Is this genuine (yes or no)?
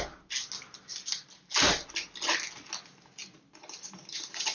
yes